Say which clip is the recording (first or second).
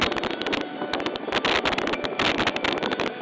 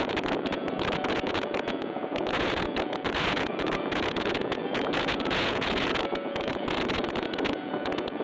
first